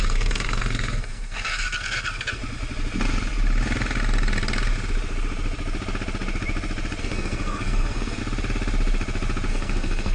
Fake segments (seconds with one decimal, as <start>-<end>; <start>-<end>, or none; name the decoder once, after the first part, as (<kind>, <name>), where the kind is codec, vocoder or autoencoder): 0.0-2.4 (codec, SNAC); 7.0-8.2; 9.5-10.1